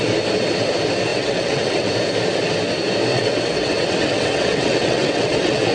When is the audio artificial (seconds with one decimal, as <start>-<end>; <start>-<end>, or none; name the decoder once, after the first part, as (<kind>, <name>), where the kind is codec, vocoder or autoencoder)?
1.1-1.9 (vocoder, WaveNeXt); 3.1-5.7